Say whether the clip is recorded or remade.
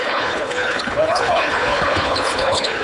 remade